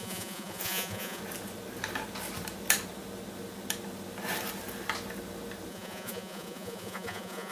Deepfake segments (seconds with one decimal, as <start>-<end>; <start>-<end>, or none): 0.0-1.2; 5.7-7.5